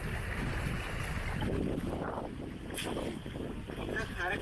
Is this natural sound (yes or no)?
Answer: yes